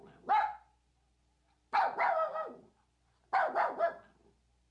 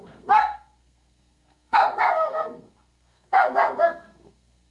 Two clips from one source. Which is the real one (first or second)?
first